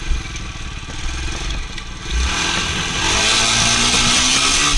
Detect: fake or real real